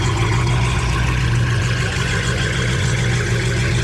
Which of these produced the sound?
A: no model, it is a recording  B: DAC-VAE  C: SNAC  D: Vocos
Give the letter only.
D